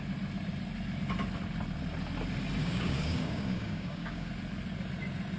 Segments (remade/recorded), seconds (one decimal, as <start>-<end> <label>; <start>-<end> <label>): 0.0-2.6 recorded; 2.6-4.3 remade; 4.3-5.4 recorded